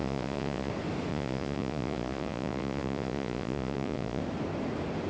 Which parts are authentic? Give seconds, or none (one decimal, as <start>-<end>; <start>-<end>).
0.7-1.1; 4.2-5.1